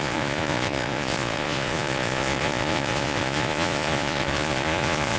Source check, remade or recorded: remade